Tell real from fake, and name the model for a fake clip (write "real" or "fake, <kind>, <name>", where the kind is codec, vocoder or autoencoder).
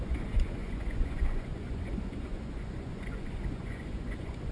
fake, vocoder, Vocos